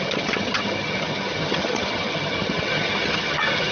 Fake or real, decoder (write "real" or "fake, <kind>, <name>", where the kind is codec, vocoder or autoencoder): fake, vocoder, HiFi-GAN